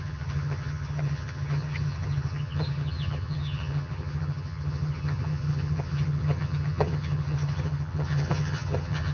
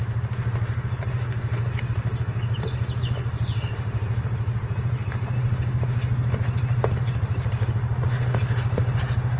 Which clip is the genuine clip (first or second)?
second